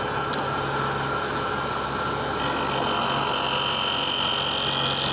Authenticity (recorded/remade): recorded